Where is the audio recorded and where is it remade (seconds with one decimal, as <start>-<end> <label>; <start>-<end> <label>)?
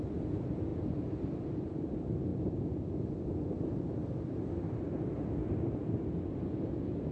0.0-0.7 recorded; 0.7-1.9 remade; 1.9-7.1 recorded